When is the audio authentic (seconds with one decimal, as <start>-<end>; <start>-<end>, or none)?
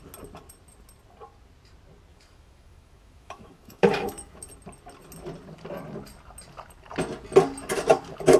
0.0-2.1; 4.4-8.4